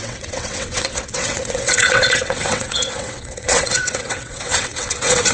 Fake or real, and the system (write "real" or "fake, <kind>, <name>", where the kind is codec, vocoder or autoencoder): fake, vocoder, WaveNeXt